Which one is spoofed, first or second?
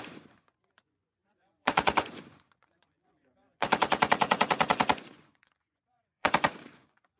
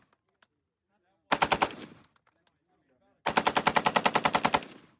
first